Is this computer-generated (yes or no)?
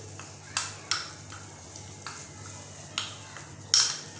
no